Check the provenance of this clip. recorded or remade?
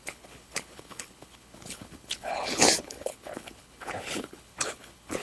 remade